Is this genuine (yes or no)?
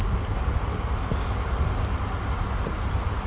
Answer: yes